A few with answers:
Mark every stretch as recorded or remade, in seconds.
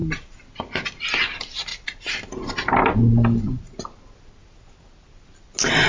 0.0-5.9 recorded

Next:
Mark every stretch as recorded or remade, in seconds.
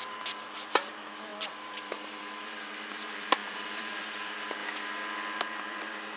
0.0-4.6 remade; 4.6-5.4 recorded; 5.4-6.2 remade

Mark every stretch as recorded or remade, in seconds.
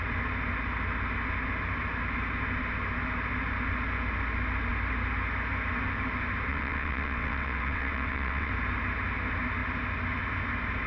0.0-6.5 recorded; 6.5-8.5 remade; 8.5-10.9 recorded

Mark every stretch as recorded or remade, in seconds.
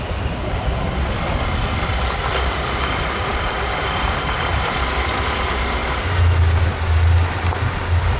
0.0-8.2 recorded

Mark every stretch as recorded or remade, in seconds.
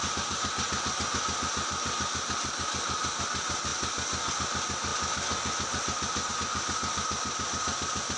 0.0-8.2 recorded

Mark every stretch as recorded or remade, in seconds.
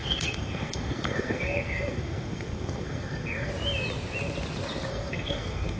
0.0-3.5 remade; 3.5-4.9 recorded; 4.9-5.8 remade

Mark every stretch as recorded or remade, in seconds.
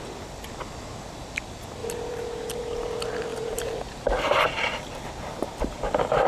0.0-1.8 recorded; 1.8-2.3 remade; 2.3-3.3 recorded; 3.3-5.8 remade; 5.8-6.3 recorded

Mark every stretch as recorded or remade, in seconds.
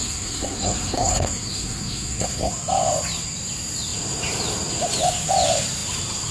0.0-2.5 remade; 2.5-6.3 recorded